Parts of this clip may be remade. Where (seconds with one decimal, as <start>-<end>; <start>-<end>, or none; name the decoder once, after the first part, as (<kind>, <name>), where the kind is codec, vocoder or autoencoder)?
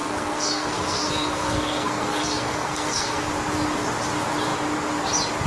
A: 0.0-3.3 (codec, SNAC)